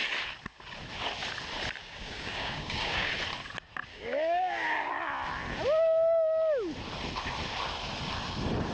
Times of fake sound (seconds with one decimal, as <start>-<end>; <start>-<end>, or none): 1.8-3.1; 3.9-4.9